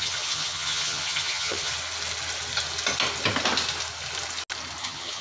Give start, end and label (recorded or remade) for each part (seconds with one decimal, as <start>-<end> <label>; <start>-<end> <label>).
0.0-1.7 remade; 1.7-4.8 recorded; 4.8-5.2 remade